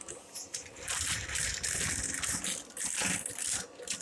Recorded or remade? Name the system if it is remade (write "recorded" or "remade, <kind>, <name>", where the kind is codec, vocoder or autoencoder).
recorded